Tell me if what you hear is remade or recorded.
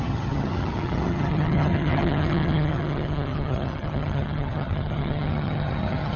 remade